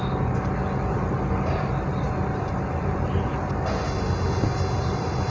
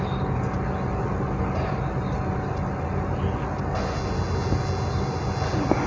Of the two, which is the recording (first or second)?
second